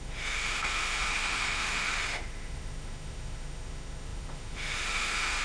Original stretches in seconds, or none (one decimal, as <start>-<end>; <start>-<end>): none